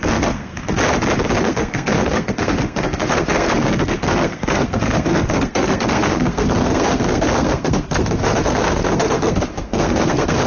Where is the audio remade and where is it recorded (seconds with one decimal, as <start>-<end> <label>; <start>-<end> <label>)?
0.0-0.8 remade; 0.8-1.4 recorded; 1.4-10.5 remade